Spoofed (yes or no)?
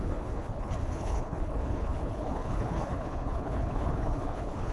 yes